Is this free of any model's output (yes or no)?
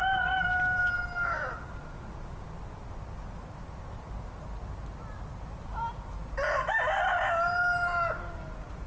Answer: yes